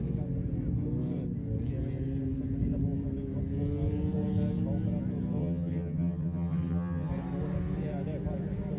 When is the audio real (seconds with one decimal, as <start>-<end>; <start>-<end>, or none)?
0.0-5.4; 7.1-8.8